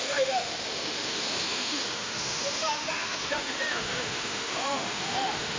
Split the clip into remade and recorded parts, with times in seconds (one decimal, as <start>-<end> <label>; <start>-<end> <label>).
0.0-5.6 remade